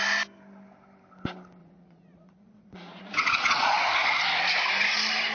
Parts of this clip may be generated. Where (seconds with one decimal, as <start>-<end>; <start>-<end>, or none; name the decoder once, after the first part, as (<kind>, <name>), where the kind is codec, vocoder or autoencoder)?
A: 1.6-3.8 (vocoder, Vocos)